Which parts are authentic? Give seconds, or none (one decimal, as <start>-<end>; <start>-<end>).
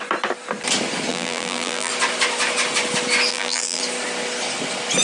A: 0.0-1.1; 1.9-3.3; 3.8-5.0